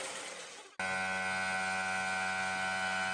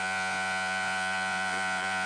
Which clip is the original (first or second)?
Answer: first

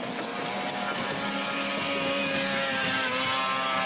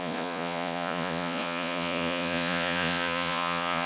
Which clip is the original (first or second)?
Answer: first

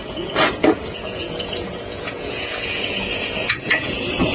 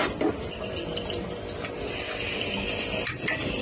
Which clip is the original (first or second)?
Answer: second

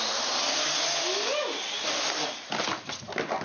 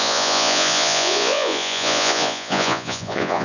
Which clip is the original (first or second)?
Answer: first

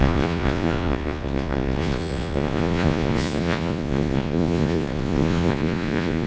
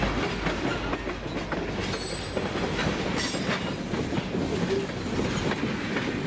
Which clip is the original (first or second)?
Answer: second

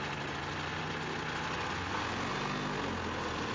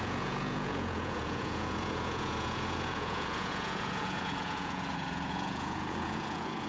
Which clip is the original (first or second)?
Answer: first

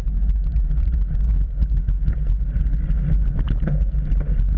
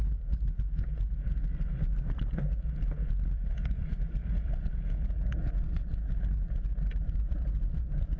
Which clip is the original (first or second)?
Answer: first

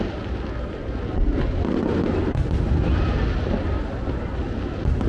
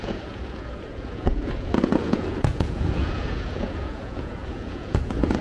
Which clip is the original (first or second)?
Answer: first